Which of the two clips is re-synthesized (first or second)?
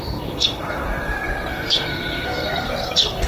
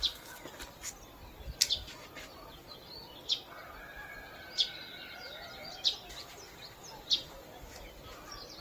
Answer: first